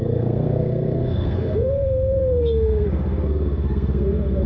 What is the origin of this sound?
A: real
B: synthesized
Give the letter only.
B